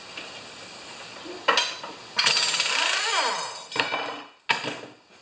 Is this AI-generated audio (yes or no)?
no